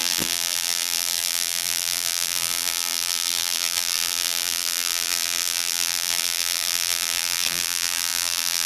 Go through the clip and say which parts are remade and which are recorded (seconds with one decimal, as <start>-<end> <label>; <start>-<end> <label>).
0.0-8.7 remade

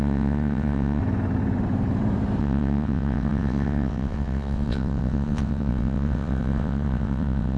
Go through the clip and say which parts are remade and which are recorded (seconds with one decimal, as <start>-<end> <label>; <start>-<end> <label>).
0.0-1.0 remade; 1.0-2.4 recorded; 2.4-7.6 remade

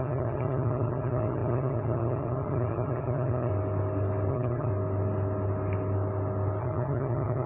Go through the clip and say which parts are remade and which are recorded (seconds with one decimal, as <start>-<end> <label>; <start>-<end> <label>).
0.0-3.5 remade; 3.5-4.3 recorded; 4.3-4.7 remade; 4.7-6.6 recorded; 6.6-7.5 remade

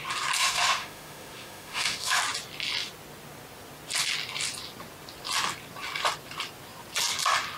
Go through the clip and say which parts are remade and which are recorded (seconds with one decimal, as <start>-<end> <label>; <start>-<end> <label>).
0.0-0.4 recorded; 0.4-2.2 remade; 2.2-7.6 recorded